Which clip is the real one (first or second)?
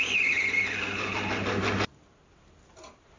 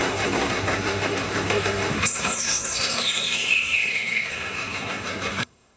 first